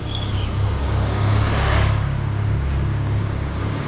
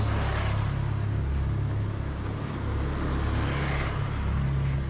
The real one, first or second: second